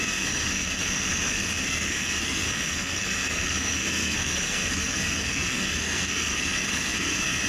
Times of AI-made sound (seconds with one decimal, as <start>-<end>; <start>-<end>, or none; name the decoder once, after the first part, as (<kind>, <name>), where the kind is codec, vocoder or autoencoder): 0.0-7.5 (codec, SNAC)